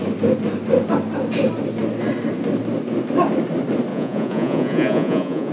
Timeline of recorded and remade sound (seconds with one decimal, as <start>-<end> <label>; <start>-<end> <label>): 0.0-3.9 recorded; 3.9-5.5 remade